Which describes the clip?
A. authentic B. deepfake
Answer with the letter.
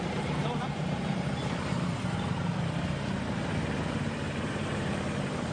B